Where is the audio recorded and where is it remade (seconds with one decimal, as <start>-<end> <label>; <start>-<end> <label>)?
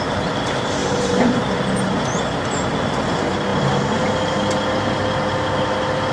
0.0-0.8 recorded; 0.8-1.8 remade; 1.8-6.1 recorded